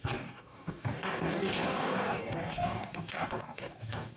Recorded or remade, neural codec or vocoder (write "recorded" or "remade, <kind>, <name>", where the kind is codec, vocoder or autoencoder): remade, codec, DAC